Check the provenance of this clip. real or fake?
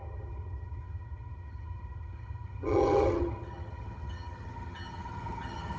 fake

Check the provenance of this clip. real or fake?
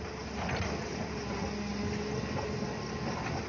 real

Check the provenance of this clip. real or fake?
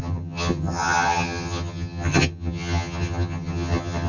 fake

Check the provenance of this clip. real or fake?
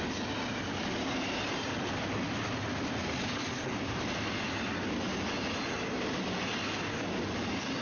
real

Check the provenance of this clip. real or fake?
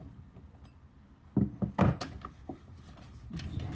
real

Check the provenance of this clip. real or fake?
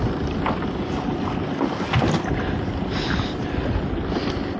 real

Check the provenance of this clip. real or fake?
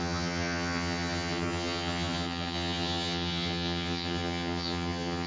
fake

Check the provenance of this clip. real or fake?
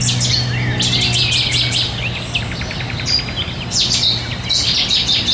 real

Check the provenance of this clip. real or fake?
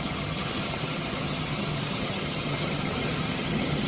fake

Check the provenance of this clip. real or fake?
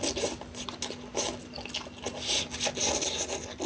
real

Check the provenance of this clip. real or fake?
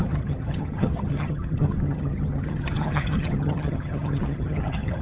fake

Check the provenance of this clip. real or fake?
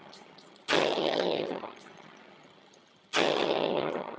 fake